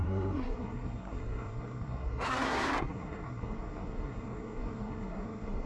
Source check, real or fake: fake